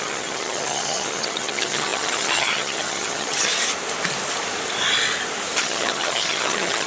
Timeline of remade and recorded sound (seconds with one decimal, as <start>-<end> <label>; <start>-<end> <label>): 0.0-3.5 remade; 3.5-5.6 recorded; 5.6-6.9 remade